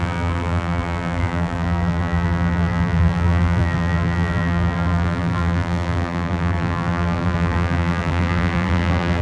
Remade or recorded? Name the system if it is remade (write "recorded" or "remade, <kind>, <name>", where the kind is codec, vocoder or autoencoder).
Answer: remade, vocoder, BigVGAN v2